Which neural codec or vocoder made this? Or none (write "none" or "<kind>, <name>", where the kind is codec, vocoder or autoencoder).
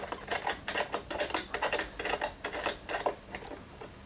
none